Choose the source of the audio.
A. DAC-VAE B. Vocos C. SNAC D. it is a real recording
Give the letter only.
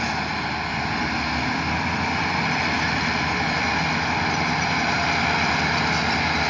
D